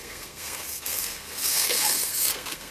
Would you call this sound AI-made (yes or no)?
yes